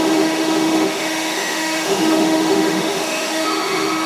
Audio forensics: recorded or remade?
remade